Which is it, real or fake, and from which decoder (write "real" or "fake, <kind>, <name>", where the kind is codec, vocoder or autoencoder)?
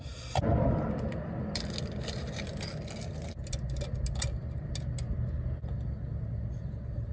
real